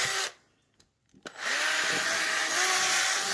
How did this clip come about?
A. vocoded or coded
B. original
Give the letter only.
B